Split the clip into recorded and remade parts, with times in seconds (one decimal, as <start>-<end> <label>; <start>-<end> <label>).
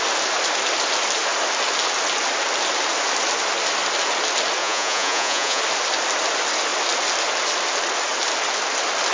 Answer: 0.0-4.6 recorded; 4.6-5.6 remade; 5.6-9.1 recorded